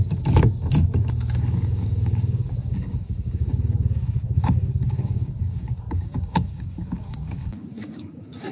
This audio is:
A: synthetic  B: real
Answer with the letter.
A